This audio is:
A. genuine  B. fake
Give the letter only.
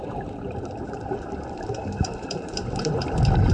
B